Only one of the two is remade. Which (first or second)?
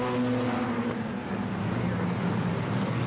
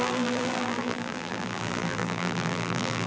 second